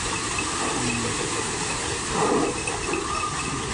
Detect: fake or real real